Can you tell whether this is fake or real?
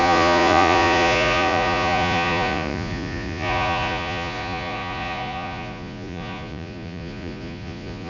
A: fake